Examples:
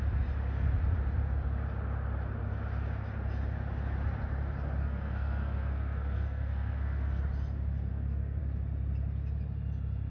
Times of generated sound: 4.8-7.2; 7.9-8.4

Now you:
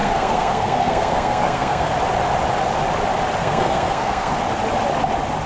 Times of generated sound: 0.0-1.9; 3.4-4.3

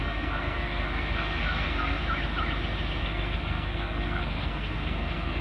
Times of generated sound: 0.0-2.0; 3.0-5.4

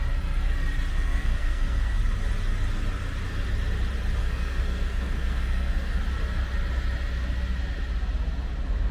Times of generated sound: 0.9-2.0; 4.2-6.0